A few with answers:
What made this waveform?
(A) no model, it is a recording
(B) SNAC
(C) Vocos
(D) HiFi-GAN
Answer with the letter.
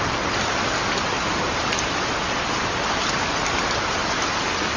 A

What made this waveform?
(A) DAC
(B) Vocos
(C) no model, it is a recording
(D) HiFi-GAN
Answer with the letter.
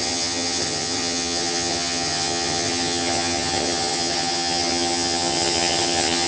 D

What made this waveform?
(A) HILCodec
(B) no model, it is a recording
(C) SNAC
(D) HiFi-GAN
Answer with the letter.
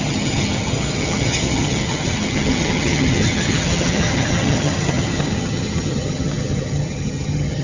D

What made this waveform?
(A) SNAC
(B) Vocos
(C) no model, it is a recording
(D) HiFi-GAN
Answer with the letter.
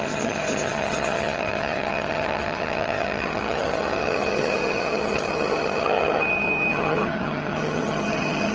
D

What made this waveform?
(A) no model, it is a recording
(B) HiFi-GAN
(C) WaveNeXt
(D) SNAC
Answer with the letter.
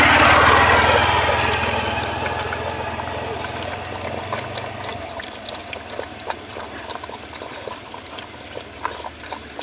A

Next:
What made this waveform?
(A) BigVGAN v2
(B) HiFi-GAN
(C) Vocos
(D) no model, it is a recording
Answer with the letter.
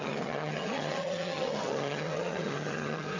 B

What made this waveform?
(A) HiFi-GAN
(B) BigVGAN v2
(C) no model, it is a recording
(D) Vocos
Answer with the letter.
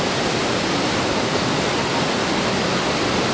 C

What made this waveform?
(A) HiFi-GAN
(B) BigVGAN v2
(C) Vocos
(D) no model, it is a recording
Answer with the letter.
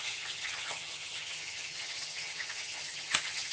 A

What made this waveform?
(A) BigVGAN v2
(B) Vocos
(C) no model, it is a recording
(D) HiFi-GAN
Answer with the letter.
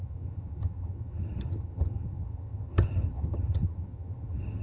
D